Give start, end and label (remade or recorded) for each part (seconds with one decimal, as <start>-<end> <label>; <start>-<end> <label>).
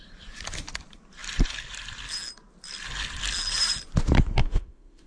0.0-4.4 recorded; 4.4-5.1 remade